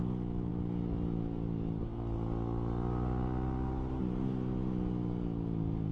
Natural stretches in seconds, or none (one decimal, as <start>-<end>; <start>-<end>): 0.0-5.9